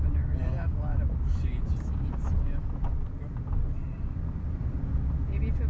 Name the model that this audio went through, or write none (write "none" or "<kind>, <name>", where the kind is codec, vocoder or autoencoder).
none